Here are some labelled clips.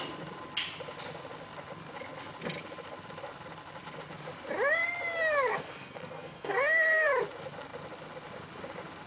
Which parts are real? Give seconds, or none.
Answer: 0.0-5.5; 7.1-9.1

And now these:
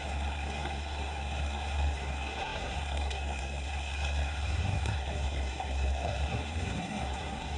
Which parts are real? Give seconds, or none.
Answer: none

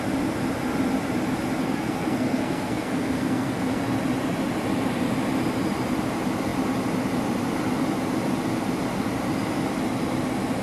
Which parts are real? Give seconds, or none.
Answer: 0.0-1.6; 3.8-10.6

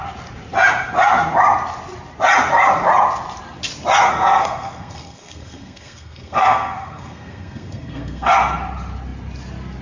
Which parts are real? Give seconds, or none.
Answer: 0.0-4.1; 8.3-9.8